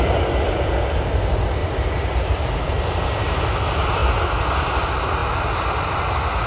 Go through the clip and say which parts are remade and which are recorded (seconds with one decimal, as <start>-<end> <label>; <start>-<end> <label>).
0.0-1.6 recorded; 1.6-2.6 remade; 2.6-6.5 recorded